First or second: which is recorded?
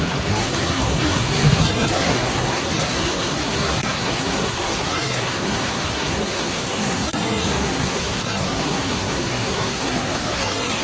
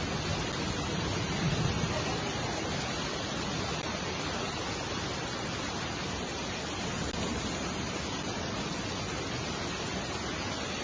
second